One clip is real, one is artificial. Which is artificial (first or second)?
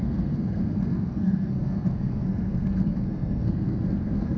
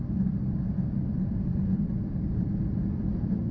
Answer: first